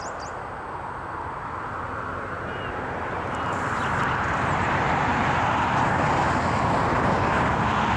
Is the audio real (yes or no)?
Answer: yes